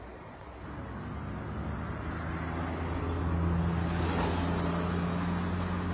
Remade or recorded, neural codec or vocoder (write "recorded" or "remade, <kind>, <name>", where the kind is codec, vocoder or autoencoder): recorded